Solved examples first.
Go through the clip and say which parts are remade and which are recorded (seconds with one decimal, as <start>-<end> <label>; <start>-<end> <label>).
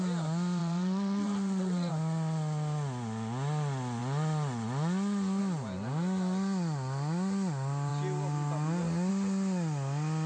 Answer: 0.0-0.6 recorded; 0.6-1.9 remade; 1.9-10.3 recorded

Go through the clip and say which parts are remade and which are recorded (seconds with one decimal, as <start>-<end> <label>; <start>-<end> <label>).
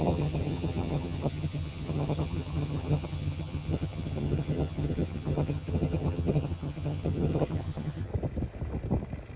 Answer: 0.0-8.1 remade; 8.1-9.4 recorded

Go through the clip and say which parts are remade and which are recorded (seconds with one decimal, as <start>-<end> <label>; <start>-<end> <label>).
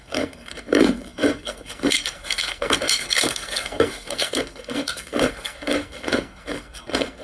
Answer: 0.0-7.2 remade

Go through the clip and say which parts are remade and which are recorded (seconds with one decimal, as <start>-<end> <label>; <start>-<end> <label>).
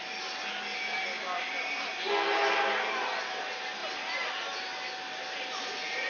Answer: 0.0-6.1 recorded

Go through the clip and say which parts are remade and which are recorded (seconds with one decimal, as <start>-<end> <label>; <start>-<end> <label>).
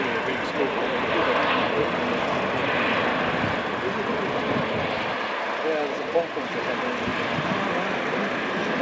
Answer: 0.0-7.1 recorded; 7.1-7.9 remade; 7.9-8.8 recorded